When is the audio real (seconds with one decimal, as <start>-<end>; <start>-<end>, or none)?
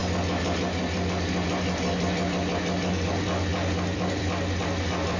0.0-3.1